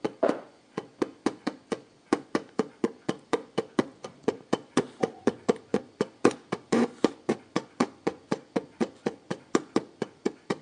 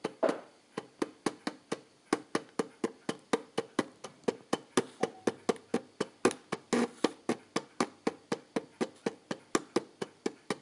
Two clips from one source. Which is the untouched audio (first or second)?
second